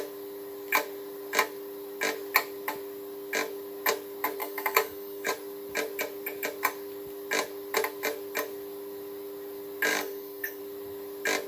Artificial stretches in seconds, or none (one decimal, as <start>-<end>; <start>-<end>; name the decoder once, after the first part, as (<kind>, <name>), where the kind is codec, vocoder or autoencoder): 4.4-5.3 (codec, DAC); 9.9-10.6